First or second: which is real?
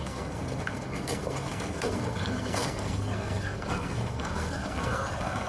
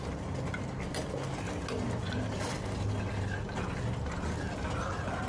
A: second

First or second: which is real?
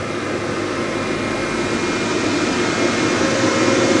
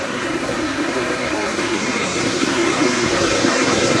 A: first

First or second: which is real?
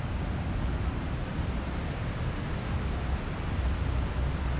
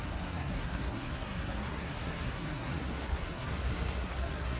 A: first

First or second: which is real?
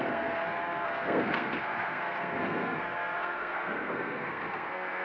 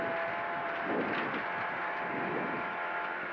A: second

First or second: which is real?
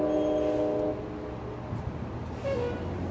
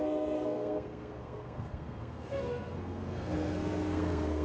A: first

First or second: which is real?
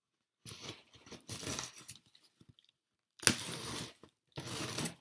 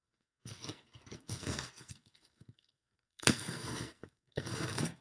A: first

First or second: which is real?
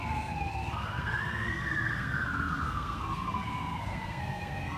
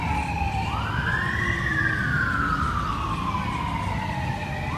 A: second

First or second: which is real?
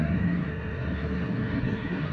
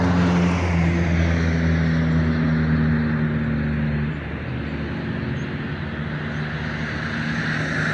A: second